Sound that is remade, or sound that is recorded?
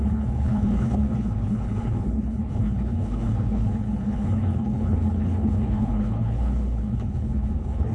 remade